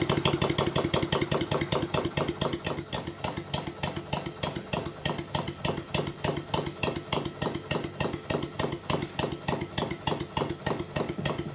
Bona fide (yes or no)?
yes